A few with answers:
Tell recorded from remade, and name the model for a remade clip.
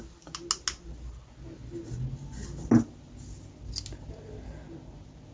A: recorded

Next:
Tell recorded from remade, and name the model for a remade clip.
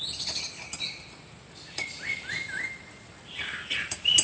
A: recorded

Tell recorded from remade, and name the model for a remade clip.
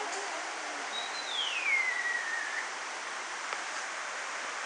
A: recorded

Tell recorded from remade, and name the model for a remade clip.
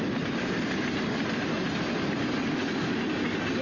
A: recorded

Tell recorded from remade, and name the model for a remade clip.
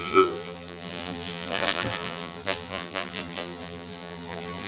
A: remade, vocoder, BigVGAN v2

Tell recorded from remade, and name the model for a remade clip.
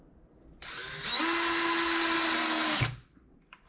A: recorded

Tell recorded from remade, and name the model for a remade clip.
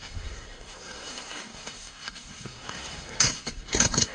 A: remade, codec, SNAC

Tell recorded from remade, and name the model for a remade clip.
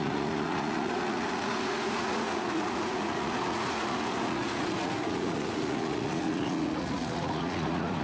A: remade, vocoder, Vocos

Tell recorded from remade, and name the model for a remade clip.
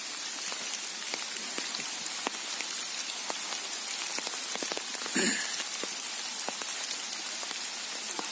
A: recorded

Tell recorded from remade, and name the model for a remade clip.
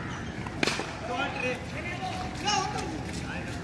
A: recorded